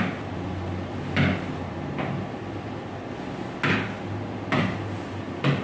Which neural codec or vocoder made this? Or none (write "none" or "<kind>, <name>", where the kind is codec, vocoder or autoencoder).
none